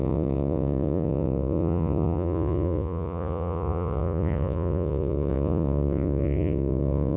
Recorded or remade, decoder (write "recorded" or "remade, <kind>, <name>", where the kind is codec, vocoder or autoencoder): remade, vocoder, Vocos